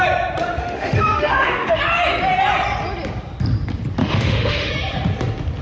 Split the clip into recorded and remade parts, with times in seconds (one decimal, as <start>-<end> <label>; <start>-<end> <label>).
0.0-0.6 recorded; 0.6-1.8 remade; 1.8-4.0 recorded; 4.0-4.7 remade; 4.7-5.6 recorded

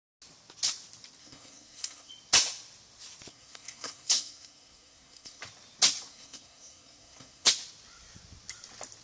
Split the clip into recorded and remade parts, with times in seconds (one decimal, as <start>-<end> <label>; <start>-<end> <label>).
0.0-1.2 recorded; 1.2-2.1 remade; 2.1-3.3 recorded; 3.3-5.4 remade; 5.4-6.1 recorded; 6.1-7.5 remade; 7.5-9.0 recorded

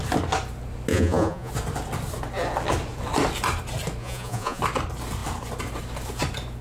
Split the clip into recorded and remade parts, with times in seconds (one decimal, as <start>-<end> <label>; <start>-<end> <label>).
0.0-0.9 recorded; 0.9-1.5 remade; 1.5-4.0 recorded; 4.0-4.6 remade; 4.6-6.6 recorded

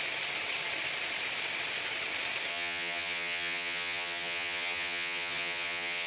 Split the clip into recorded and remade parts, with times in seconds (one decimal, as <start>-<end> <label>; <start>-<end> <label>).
0.0-2.5 recorded; 2.5-6.1 remade

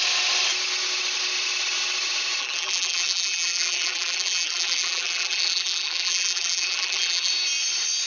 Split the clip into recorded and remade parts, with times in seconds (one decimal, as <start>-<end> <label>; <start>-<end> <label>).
0.0-2.4 recorded; 2.4-7.3 remade; 7.3-8.1 recorded